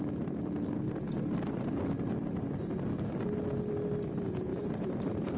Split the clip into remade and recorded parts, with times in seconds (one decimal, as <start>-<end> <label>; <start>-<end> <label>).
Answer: 0.0-4.5 recorded; 4.5-5.4 remade